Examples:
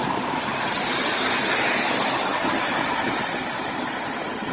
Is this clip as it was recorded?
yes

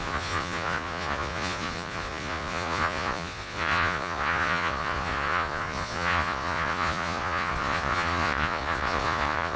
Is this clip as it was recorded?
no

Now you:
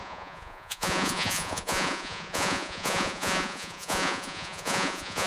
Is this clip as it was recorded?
no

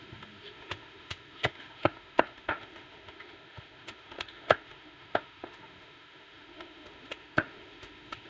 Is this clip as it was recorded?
no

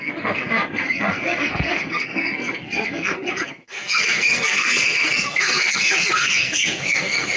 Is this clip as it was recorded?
no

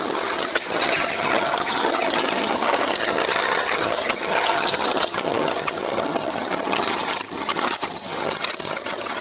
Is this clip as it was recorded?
no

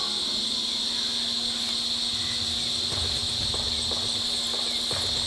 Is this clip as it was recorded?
yes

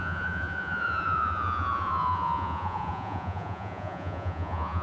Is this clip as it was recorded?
no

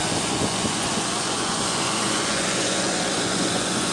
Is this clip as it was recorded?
no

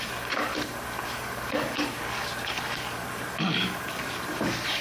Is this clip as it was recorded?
no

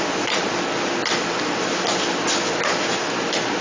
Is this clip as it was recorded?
yes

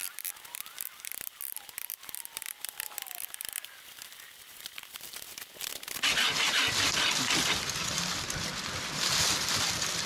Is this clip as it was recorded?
no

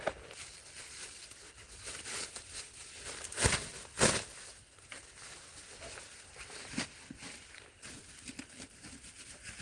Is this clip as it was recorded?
yes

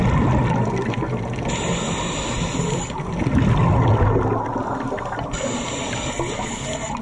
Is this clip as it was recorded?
yes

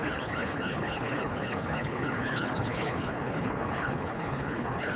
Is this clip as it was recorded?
no